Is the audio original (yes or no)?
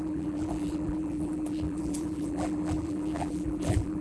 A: no